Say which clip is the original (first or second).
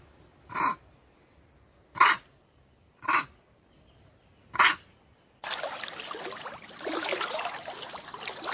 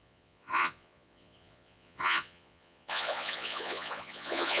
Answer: first